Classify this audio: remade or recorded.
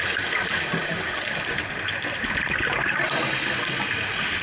recorded